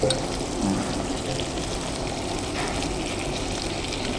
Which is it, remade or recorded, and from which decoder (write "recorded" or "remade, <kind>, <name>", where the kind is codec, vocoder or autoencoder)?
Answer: recorded